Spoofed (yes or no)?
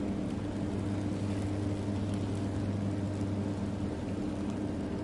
no